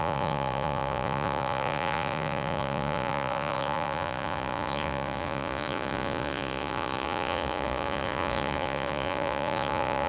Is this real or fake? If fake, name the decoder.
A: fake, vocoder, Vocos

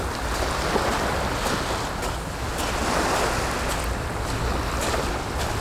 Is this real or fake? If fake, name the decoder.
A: real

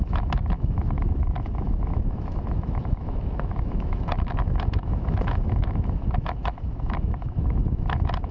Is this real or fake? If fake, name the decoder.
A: fake, autoencoder, DAC-VAE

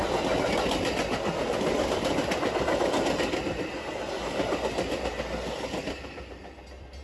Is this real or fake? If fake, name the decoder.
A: real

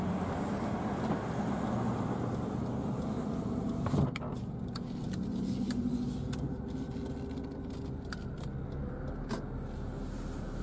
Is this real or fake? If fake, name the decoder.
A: real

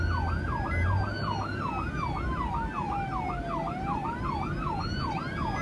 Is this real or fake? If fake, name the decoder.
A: real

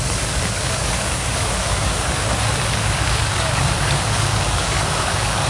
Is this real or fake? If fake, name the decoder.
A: fake, codec, DAC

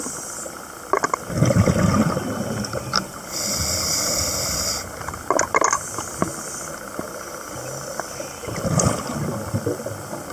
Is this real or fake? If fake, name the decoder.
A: real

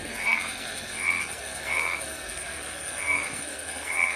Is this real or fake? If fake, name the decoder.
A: fake, codec, SNAC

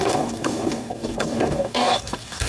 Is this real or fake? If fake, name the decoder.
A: fake, codec, DAC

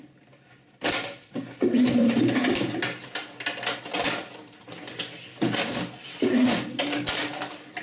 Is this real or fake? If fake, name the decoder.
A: real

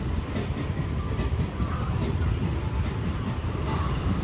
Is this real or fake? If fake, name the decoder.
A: fake, vocoder, BigVGAN v2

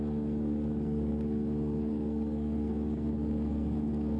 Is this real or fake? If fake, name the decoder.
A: fake, codec, SNAC